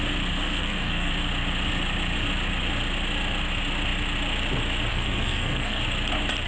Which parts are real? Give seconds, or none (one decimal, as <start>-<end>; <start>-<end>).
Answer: 0.0-0.4; 1.1-4.9; 5.8-6.5